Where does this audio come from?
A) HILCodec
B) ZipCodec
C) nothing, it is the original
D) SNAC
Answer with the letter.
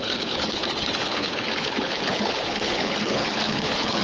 A